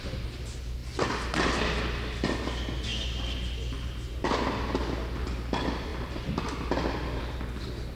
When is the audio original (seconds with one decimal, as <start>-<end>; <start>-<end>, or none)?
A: 0.0-7.9